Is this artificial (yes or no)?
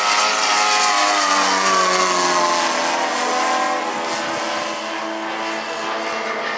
no